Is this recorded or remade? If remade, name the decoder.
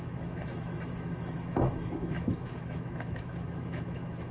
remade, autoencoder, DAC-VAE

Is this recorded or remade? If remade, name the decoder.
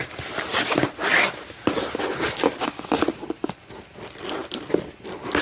recorded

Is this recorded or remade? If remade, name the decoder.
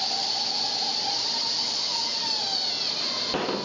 recorded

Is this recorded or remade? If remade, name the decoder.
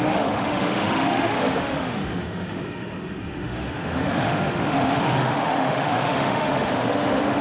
remade, autoencoder, DAC-VAE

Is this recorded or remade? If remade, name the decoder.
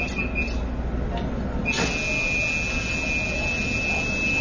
recorded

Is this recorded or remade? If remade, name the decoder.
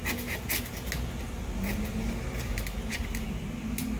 recorded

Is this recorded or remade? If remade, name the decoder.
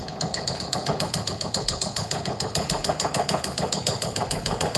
remade, codec, HILCodec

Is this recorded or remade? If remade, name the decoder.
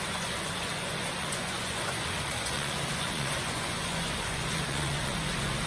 remade, vocoder, Vocos